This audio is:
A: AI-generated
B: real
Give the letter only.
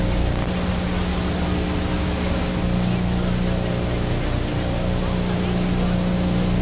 B